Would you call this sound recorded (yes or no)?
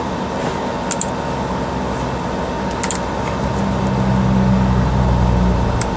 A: yes